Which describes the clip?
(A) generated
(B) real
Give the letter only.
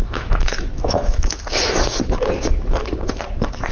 A